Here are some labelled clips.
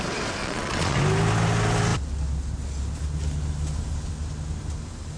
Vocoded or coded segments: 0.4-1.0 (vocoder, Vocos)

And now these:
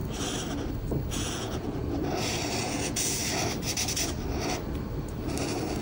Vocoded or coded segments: 1.1-1.8 (vocoder, Vocos); 2.6-3.2